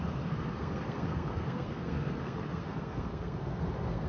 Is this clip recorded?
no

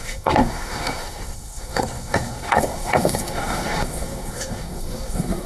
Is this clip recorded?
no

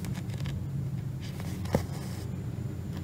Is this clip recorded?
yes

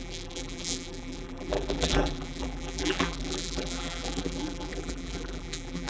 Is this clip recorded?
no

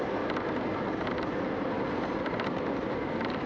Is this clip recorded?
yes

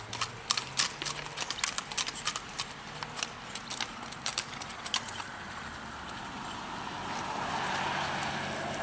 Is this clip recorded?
yes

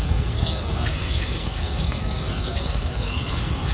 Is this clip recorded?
no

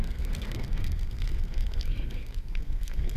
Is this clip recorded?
no